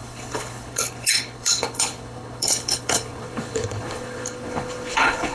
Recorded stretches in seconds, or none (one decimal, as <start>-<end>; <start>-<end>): none

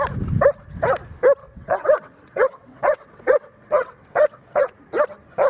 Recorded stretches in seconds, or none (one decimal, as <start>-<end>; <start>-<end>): 0.0-1.4; 4.7-5.5

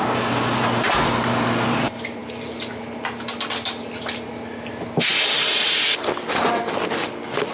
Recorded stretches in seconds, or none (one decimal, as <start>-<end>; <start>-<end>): 0.0-7.5

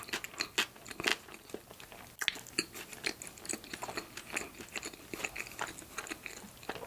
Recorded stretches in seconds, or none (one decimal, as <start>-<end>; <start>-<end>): 0.0-6.9

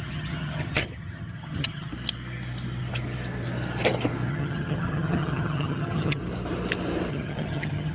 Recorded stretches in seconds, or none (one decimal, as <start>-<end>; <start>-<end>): 1.9-4.3; 6.2-7.1